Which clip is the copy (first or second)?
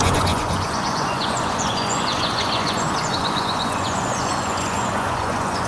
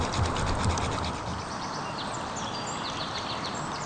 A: first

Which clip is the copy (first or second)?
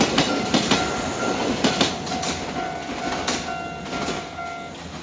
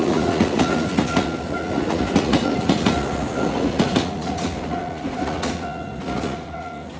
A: second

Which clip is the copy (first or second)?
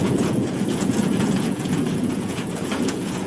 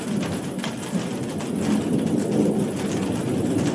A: first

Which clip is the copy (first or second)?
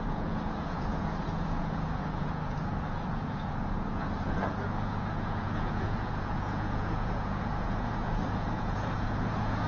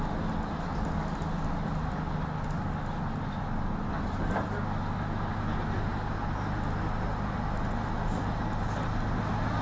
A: first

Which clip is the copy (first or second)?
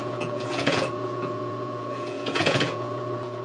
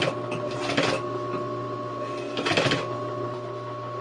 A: first